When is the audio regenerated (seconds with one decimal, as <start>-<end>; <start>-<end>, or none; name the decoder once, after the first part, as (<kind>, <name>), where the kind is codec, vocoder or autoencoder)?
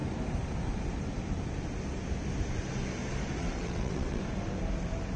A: 3.4-4.2 (vocoder, WaveNeXt)